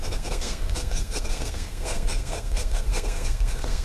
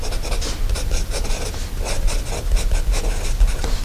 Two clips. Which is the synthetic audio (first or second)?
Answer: first